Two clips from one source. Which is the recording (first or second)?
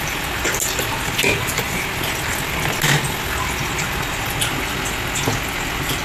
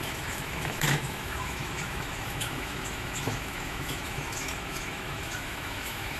first